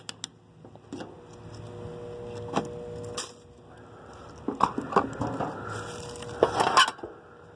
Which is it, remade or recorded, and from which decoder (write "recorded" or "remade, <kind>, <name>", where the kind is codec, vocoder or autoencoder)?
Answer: recorded